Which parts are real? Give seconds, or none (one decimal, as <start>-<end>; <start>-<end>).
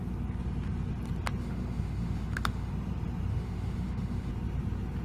0.0-1.4; 2.7-3.3; 4.3-5.0